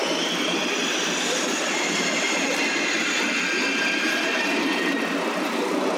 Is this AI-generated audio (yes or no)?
no